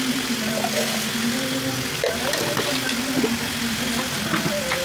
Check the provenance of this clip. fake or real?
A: real